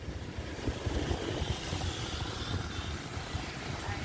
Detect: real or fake fake